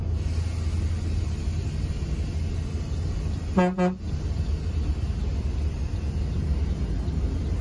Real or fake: real